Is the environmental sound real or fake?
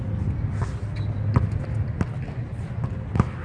real